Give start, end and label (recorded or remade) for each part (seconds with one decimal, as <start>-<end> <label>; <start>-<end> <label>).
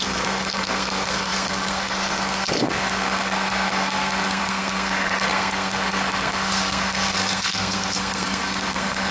0.0-9.1 remade